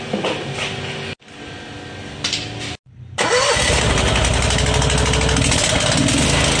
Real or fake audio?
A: real